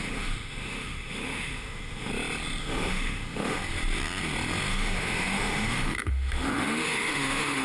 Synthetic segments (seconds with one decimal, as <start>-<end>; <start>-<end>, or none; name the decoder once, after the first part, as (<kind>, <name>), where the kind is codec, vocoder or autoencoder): 0.0-2.1 (autoencoder, DAC-VAE); 2.6-3.6; 4.7-7.6